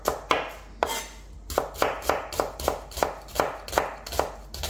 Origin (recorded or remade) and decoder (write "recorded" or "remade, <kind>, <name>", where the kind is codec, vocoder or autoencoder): recorded